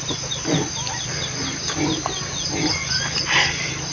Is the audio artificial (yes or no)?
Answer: no